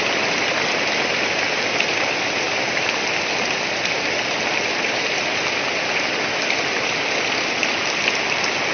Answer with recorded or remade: recorded